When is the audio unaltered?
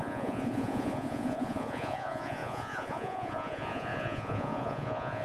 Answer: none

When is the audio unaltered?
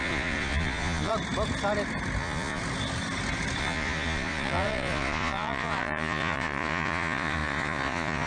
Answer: 1.1-2.2; 2.6-3.6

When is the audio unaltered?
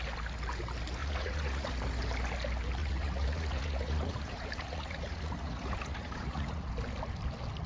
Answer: 0.0-1.0; 1.7-2.8; 6.7-7.7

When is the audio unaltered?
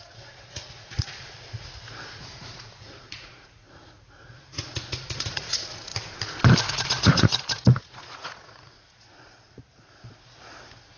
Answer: 5.9-6.7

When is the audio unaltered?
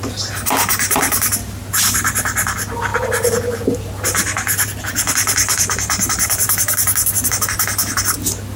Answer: 0.0-8.6